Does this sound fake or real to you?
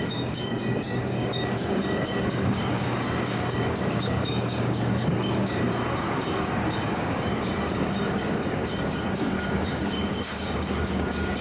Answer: fake